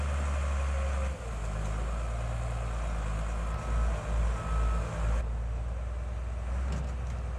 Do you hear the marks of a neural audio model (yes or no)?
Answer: no